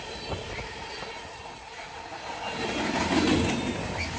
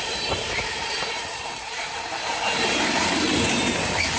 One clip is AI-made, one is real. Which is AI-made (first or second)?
second